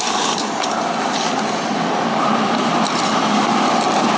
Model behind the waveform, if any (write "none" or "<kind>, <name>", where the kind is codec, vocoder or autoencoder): none